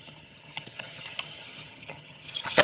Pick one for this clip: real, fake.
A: fake